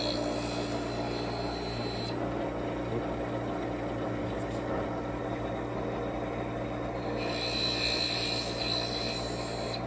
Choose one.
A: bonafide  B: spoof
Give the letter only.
A